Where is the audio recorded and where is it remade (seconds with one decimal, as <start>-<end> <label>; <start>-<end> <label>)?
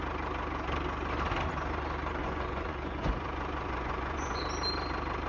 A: 0.0-2.2 recorded; 2.2-4.4 remade; 4.4-5.3 recorded